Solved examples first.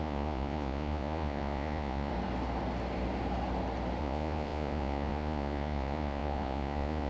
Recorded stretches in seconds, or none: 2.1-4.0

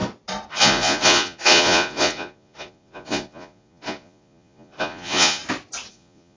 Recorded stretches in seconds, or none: 0.0-0.5; 5.4-5.9

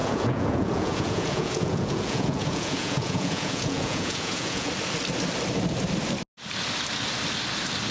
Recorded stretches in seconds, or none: 4.7-7.9

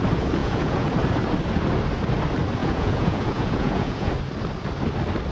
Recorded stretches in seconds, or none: 0.0-0.4; 0.9-2.6; 4.1-5.3

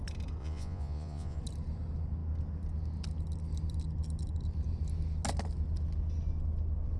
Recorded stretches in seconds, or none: 0.0-0.4; 1.4-7.0